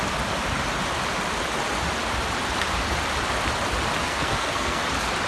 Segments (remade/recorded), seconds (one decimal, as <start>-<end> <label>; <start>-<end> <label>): 0.0-4.0 recorded; 4.0-4.8 remade; 4.8-5.3 recorded